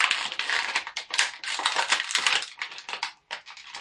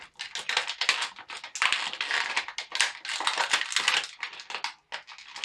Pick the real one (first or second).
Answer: second